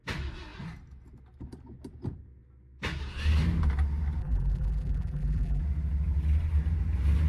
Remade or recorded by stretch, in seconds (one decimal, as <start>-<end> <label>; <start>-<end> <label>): 0.0-4.2 recorded; 4.2-5.6 remade; 5.6-7.3 recorded